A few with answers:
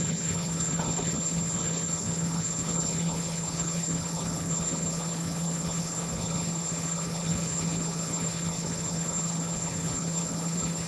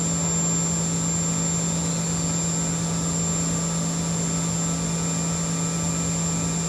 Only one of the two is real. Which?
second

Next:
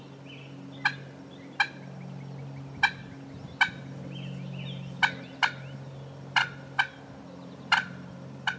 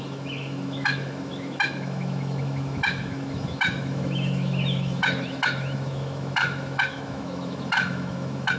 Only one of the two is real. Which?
first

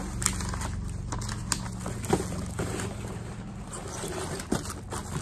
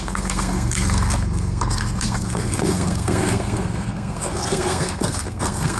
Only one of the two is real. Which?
first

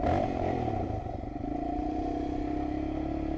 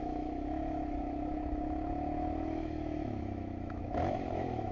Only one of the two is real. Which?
first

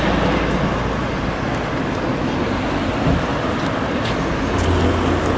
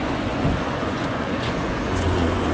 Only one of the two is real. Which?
first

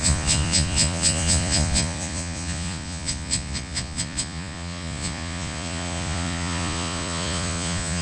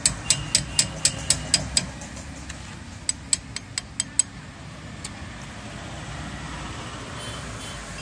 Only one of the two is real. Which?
second